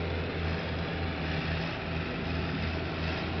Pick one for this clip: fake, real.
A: real